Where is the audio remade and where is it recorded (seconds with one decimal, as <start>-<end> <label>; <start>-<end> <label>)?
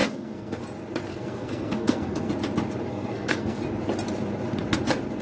0.0-0.6 remade; 0.6-1.1 recorded; 1.1-2.3 remade; 2.3-2.9 recorded; 2.9-3.6 remade; 3.6-5.2 recorded